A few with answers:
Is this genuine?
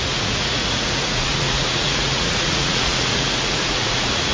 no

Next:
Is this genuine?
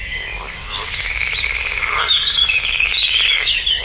no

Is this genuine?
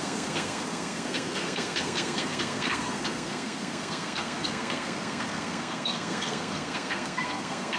no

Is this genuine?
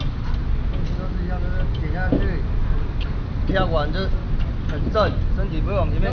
yes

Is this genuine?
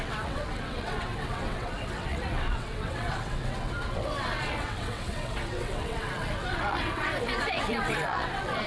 no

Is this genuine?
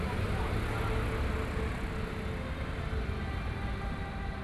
yes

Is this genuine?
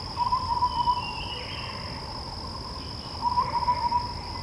yes